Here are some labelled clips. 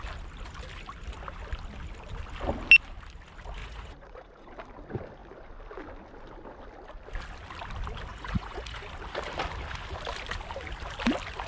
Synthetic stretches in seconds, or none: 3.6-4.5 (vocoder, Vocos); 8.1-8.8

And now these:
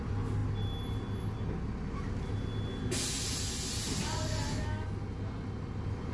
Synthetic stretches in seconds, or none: none

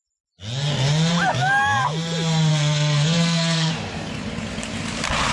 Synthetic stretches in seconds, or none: 2.5-3.7 (codec, SNAC)

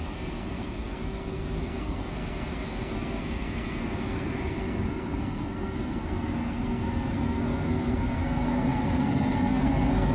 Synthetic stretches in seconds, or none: 0.0-10.1 (codec, SNAC)

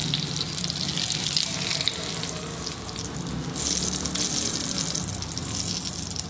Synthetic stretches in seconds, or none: none